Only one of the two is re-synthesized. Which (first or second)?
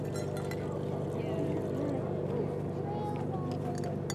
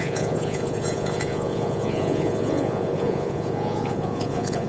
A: second